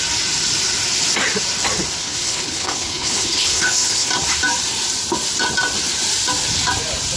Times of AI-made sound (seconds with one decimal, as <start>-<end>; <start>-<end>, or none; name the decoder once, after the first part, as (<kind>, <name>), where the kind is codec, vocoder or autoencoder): 2.0-4.1 (codec, HILCodec)

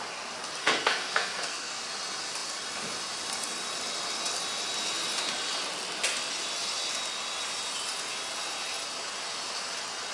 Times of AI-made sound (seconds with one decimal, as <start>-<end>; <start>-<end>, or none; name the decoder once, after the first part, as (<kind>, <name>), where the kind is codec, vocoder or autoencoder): 0.6-1.8 (codec, SNAC)

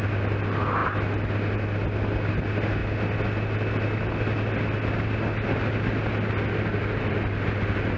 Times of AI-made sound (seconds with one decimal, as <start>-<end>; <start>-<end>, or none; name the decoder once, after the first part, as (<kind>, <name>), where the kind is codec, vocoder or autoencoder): none